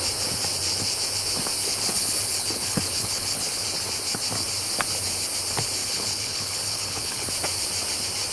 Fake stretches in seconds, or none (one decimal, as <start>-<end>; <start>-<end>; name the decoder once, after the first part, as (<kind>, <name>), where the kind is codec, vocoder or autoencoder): 1.6-3.5 (codec, HILCodec); 5.8-7.3